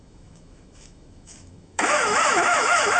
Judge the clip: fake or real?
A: fake